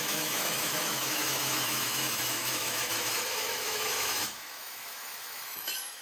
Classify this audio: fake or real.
fake